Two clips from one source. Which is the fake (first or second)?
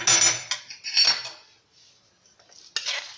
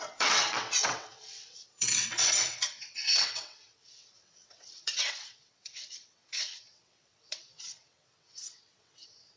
second